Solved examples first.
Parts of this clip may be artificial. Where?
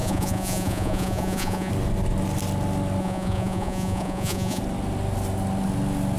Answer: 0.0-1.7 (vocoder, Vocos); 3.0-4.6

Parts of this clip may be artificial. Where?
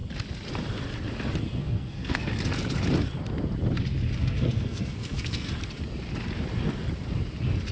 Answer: 1.6-2.3 (codec, SNAC); 4.2-5.5